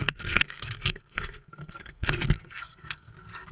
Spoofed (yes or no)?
yes